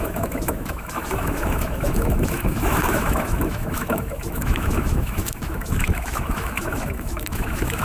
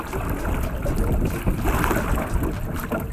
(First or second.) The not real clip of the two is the first